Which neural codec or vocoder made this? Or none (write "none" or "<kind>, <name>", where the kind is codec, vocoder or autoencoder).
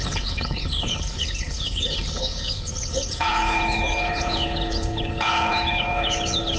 codec, HILCodec